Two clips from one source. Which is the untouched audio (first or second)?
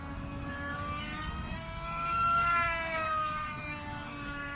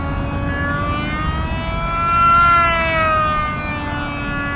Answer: second